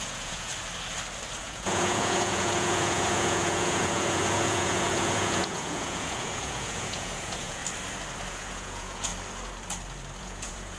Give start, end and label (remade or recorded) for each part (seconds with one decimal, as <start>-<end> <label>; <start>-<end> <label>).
0.0-0.5 remade; 0.5-1.4 recorded; 1.4-7.6 remade; 7.6-8.3 recorded; 8.3-9.1 remade; 9.1-10.2 recorded; 10.2-10.8 remade